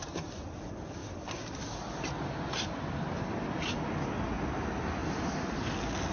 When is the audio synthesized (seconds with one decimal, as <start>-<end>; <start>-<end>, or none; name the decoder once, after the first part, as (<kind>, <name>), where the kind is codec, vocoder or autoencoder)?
none

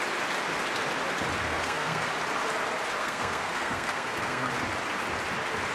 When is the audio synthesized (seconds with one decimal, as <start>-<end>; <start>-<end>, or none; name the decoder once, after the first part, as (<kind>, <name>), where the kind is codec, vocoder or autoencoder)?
1.4-2.1 (codec, SNAC); 3.0-4.5

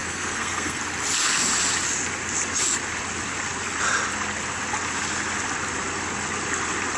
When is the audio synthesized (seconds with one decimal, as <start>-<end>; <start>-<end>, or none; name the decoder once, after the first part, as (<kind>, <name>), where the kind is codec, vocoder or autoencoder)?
0.0-0.8 (codec, SNAC)

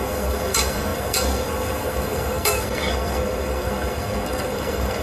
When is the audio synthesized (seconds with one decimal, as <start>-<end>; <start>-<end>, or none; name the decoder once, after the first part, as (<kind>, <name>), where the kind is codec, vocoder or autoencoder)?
0.0-5.0 (codec, SNAC)